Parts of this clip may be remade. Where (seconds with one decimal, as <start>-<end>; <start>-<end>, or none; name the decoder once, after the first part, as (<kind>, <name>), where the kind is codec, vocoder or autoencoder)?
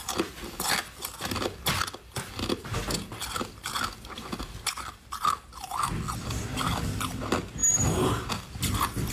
none